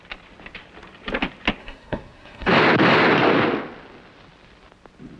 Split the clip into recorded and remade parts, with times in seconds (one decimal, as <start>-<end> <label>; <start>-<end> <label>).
0.0-1.6 recorded; 1.6-2.5 remade; 2.5-5.2 recorded